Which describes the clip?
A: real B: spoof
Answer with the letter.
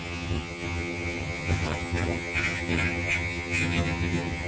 B